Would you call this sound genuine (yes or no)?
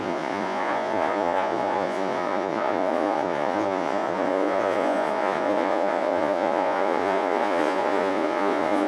no